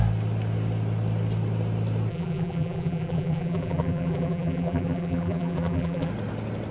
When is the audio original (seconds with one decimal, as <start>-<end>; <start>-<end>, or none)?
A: 0.0-2.1; 6.1-6.7